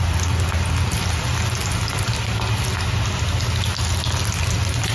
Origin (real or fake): real